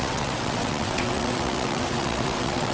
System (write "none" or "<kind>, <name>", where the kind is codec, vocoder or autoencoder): vocoder, WaveNeXt